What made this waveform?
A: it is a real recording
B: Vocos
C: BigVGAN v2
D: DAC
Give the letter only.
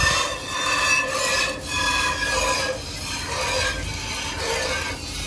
A